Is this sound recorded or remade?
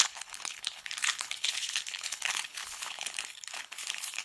remade